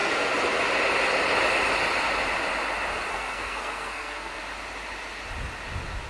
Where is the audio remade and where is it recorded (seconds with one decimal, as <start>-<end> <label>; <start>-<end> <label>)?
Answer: 0.0-3.1 recorded; 3.1-4.4 remade; 4.4-6.1 recorded